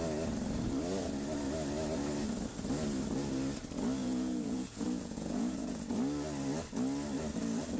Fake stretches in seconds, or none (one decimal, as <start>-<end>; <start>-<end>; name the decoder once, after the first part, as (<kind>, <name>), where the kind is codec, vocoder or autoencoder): 4.0-5.8 (vocoder, Vocos)